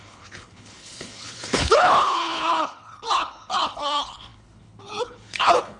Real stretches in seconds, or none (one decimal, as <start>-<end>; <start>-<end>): none